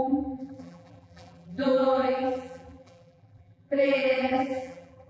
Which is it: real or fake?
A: fake